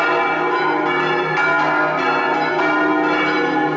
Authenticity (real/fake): real